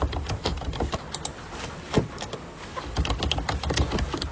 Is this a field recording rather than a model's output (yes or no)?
yes